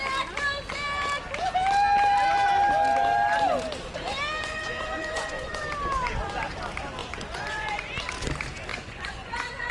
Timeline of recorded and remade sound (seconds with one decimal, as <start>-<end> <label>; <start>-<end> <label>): 0.0-4.4 recorded; 4.4-5.6 remade; 5.6-7.0 recorded; 7.0-8.0 remade; 8.0-8.7 recorded; 8.7-9.7 remade